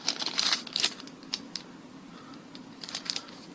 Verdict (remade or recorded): remade